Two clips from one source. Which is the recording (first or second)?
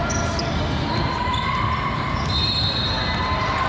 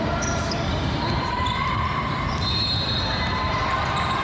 first